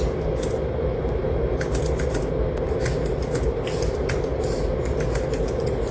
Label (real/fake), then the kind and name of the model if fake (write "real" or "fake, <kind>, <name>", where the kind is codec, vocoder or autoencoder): real